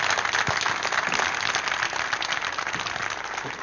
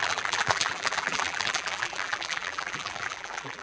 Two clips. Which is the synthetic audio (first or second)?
second